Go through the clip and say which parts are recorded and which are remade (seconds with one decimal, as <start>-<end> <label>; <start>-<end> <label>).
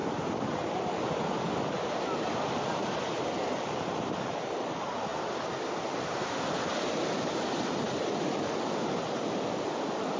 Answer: 0.0-10.2 recorded